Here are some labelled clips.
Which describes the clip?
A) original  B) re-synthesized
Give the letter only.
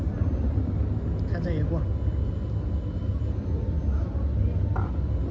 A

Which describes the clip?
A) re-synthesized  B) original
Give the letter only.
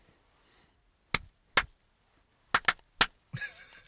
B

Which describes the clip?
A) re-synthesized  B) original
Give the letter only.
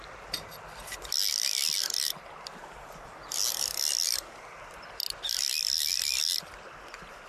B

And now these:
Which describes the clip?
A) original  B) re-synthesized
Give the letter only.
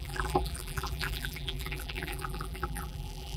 B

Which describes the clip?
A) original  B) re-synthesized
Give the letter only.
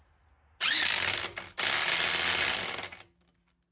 A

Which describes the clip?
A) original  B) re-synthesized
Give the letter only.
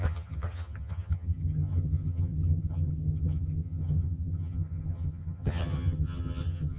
B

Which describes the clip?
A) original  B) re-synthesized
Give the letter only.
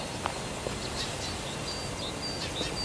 A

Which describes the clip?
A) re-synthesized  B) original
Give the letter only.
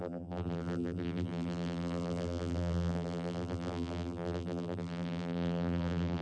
A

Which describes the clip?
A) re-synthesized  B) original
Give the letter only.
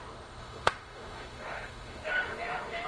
A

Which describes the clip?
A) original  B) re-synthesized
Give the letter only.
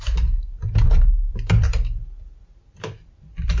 B